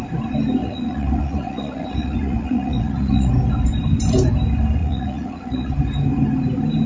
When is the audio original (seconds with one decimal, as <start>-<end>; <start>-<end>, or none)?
0.0-0.6; 3.3-4.8; 5.7-6.9